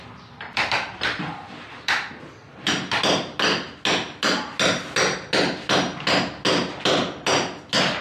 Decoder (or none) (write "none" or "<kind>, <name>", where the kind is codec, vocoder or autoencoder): none